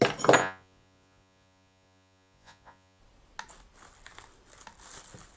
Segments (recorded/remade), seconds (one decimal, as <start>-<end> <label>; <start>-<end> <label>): 0.0-0.4 recorded; 0.4-3.0 remade; 3.0-5.4 recorded